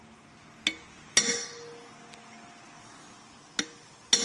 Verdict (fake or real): real